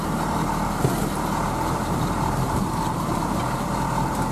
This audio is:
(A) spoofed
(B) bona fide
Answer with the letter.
A